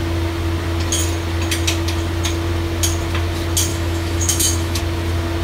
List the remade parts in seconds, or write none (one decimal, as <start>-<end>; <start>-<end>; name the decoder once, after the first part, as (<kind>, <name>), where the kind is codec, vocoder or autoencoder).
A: 3.7-4.8 (autoencoder, DAC-VAE)